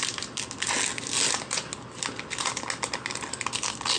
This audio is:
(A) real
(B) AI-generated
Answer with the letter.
A